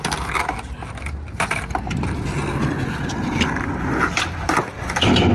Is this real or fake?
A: real